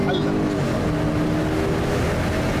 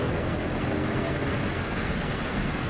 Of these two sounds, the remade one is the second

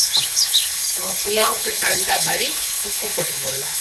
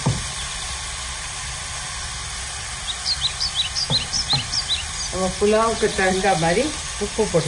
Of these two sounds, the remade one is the first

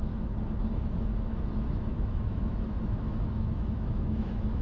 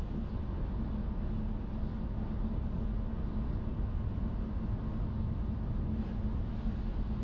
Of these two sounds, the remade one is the first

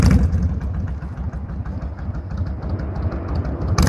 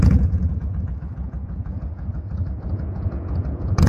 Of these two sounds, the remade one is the second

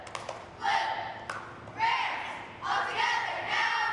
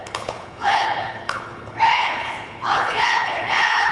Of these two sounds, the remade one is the second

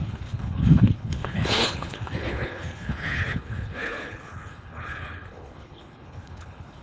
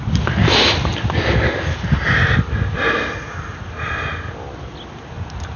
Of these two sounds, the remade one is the first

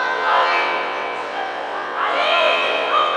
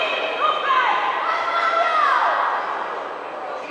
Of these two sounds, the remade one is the first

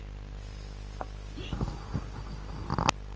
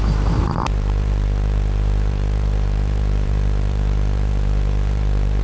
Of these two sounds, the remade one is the second